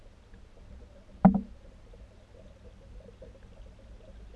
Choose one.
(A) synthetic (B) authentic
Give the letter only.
B